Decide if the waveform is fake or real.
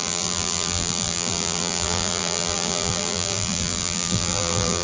fake